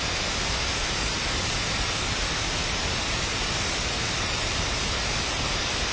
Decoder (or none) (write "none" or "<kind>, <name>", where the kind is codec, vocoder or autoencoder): none